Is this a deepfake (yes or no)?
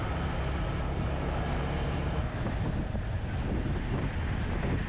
no